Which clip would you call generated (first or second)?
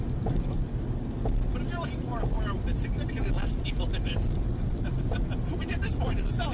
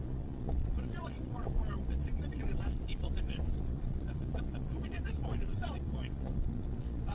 second